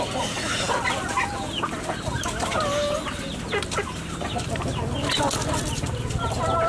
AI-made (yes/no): no